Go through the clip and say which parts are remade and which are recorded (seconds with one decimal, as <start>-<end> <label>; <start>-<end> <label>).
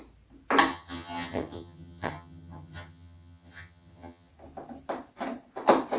0.0-0.7 recorded; 0.7-4.3 remade; 4.3-6.0 recorded